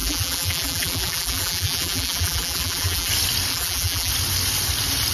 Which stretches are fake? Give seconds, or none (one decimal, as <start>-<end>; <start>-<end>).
0.0-3.1; 3.5-4.1

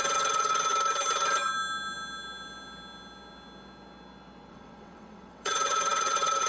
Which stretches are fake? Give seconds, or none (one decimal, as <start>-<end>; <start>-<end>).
0.0-0.7; 4.5-6.5

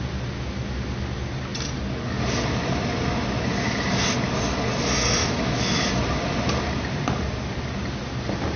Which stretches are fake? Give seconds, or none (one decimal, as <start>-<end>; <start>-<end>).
5.2-5.9

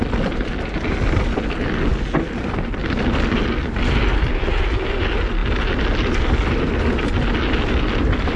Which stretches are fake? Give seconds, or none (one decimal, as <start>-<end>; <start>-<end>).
none

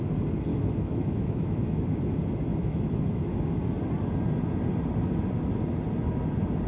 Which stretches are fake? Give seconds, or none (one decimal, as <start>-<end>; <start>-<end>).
0.5-1.8; 2.5-3.5

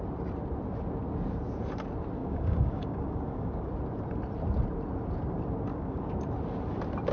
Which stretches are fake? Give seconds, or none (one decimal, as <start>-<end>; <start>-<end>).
2.2-3.7; 5.7-6.2